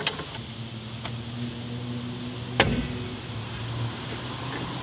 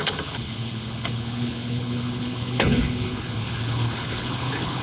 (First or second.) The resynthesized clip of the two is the second